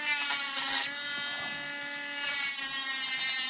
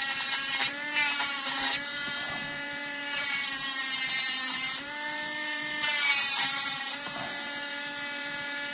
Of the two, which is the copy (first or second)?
second